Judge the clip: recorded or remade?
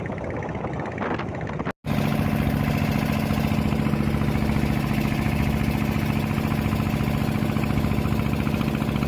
recorded